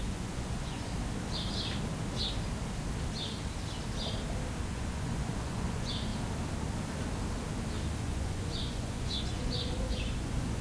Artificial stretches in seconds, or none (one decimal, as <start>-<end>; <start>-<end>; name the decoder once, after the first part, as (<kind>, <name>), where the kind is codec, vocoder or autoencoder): 0.0-0.9 (vocoder, Vocos); 4.6-6.1; 8.0-10.6